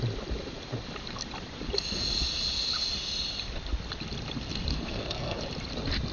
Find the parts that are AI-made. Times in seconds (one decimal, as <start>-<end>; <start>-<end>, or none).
4.7-5.4